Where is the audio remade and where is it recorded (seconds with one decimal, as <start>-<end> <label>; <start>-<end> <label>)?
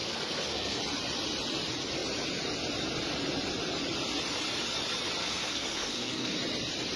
0.0-0.8 remade; 0.8-5.2 recorded; 5.2-6.3 remade; 6.3-7.0 recorded